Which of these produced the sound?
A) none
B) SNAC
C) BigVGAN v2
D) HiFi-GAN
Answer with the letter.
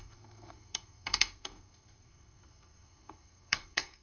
B